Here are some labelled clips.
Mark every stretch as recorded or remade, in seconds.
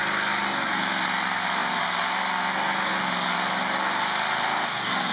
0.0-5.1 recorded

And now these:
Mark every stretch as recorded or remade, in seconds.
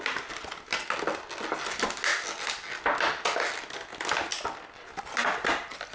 0.0-5.9 recorded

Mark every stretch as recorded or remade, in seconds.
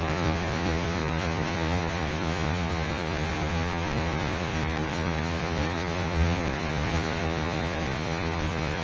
0.0-8.8 remade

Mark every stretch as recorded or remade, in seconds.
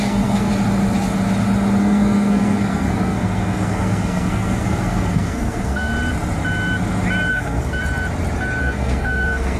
0.0-0.5 remade; 0.5-1.8 recorded; 1.8-5.9 remade; 5.9-7.3 recorded; 7.3-7.8 remade; 7.8-8.6 recorded; 8.6-9.6 remade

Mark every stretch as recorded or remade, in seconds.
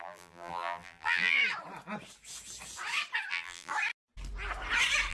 0.0-1.4 remade; 1.4-3.3 recorded; 3.3-3.7 remade; 3.7-5.1 recorded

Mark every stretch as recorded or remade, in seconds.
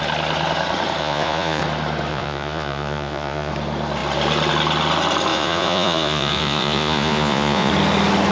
0.0-1.0 recorded; 1.0-1.6 remade; 1.6-2.1 recorded; 2.1-3.5 remade; 3.5-5.3 recorded; 5.3-7.7 remade; 7.7-8.3 recorded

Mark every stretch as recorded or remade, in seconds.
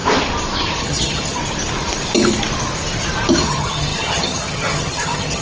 0.0-0.8 recorded; 0.8-1.4 remade; 1.4-3.3 recorded; 3.3-5.4 remade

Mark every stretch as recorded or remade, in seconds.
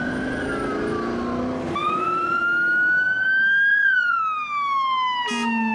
0.0-1.8 recorded; 1.8-2.4 remade; 2.4-3.7 recorded; 3.7-4.2 remade; 4.2-5.7 recorded